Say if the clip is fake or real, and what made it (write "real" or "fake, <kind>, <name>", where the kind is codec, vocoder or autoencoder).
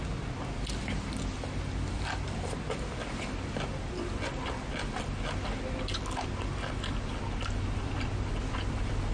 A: real